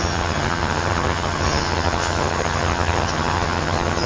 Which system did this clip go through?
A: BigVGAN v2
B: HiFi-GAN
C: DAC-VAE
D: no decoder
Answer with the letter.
B